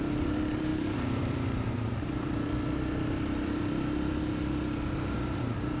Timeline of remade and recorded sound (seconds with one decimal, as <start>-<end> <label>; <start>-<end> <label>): 0.0-0.7 recorded; 0.7-4.2 remade; 4.2-5.8 recorded